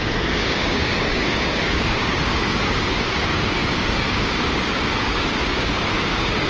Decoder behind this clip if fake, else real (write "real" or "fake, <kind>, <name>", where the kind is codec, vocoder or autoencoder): fake, codec, DAC